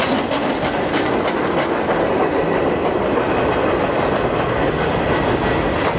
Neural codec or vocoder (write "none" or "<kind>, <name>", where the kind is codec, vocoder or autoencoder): none